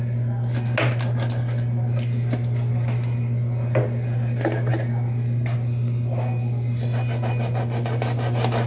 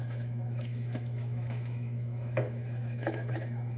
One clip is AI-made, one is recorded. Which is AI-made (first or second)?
second